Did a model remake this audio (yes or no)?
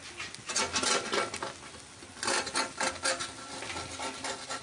no